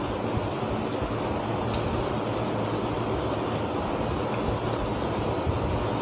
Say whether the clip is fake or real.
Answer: real